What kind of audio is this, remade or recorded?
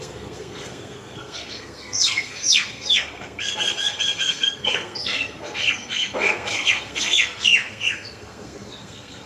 remade